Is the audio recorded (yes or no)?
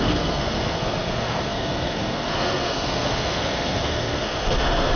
no